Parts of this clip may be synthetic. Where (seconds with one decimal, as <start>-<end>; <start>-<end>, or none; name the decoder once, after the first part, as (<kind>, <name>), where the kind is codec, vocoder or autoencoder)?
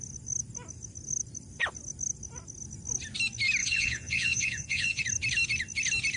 3.6-5.0 (vocoder, Vocos)